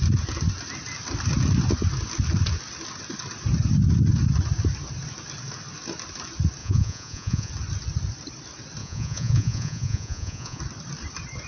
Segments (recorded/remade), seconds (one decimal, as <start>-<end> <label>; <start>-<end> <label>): 0.0-6.6 recorded; 6.6-7.5 remade; 7.5-8.8 recorded; 8.8-10.6 remade; 10.6-11.5 recorded